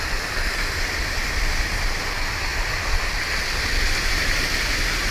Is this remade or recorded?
recorded